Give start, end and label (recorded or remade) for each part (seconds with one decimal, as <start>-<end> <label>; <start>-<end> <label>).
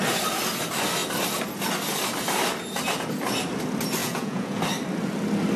0.0-4.0 recorded; 4.0-4.6 remade; 4.6-5.6 recorded